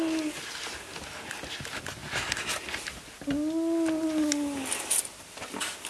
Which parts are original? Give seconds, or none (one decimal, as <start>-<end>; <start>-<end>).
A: 0.0-5.9